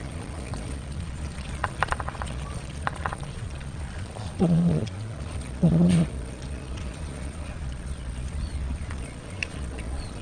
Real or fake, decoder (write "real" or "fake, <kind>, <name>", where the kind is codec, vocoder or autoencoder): fake, vocoder, Vocos